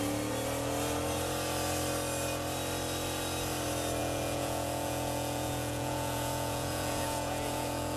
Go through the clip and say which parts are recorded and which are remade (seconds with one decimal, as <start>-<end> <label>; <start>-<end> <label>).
0.0-4.0 recorded; 4.0-8.0 remade